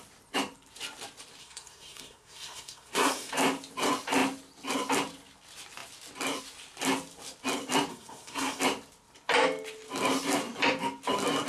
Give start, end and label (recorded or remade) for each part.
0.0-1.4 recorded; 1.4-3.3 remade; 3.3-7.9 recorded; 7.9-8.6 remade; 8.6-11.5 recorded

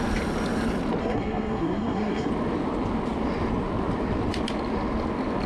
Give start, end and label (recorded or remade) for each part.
0.0-1.0 recorded; 1.0-2.3 remade; 2.3-5.5 recorded

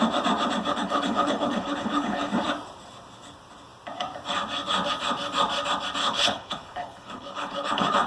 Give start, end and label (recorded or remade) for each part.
0.0-0.6 recorded; 0.6-2.3 remade; 2.3-6.0 recorded; 6.0-8.1 remade

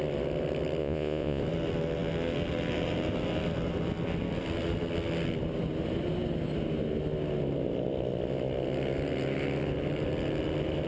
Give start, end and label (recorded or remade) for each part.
0.0-0.8 recorded; 0.8-1.4 remade; 1.4-10.9 recorded

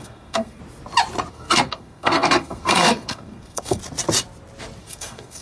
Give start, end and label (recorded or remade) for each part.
0.0-0.6 remade; 0.6-1.3 recorded; 1.3-3.8 remade; 3.8-4.8 recorded; 4.8-5.4 remade

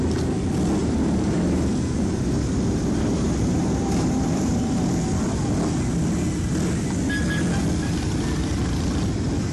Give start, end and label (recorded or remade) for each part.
0.0-0.8 recorded; 0.8-4.9 remade; 4.9-9.5 recorded

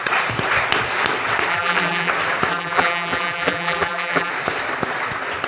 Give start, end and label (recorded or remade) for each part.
0.0-1.5 recorded; 1.5-2.1 remade; 2.1-2.5 recorded; 2.5-4.3 remade; 4.3-5.5 recorded

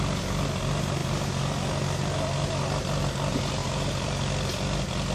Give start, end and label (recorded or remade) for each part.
0.0-3.6 recorded; 3.6-4.3 remade; 4.3-5.1 recorded